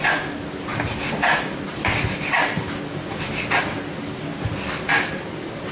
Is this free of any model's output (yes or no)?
yes